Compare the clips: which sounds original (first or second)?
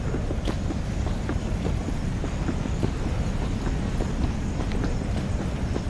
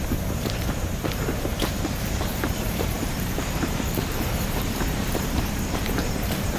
first